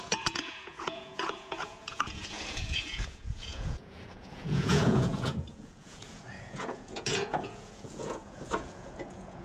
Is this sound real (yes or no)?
no